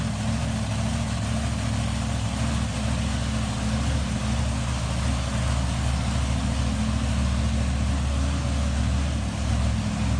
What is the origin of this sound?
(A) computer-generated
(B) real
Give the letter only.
B